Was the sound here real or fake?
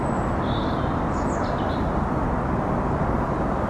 real